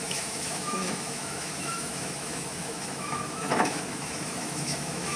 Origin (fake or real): fake